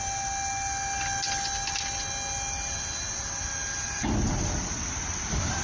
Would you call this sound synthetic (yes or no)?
no